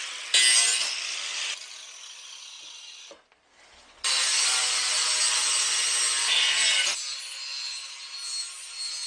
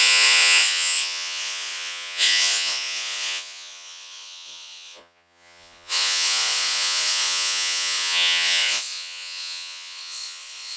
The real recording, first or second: first